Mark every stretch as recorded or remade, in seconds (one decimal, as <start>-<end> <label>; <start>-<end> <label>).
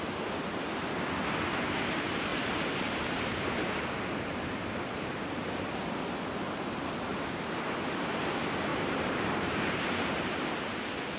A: 0.0-2.3 recorded; 2.3-5.0 remade; 5.0-8.7 recorded; 8.7-10.5 remade; 10.5-11.2 recorded